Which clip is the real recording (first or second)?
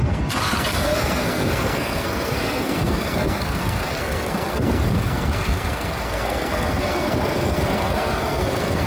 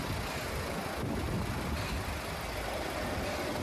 second